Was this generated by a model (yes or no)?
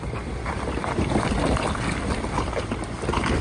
yes